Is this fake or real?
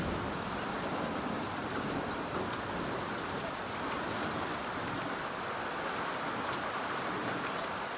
real